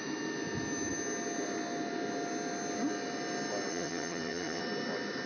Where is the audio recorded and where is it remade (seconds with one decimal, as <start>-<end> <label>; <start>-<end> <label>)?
0.0-3.7 recorded; 3.7-4.6 remade; 4.6-5.3 recorded